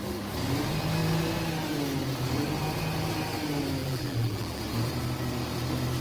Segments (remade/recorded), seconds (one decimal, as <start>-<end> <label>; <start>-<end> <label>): 0.0-3.8 recorded; 3.8-4.6 remade; 4.6-6.0 recorded